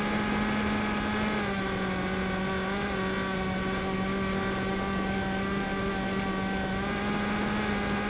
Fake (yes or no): no